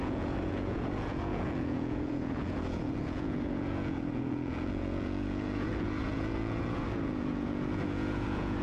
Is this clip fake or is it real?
fake